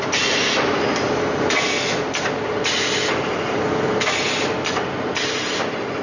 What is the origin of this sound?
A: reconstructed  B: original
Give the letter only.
B